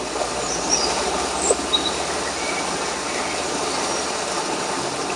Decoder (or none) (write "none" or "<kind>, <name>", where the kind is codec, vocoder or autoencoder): none